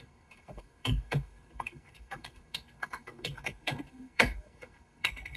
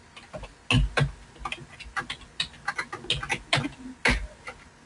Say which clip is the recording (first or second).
second